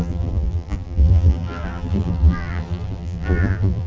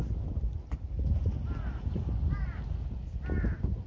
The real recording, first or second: second